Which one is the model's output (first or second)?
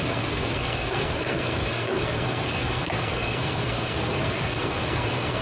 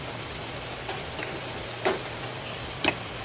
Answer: first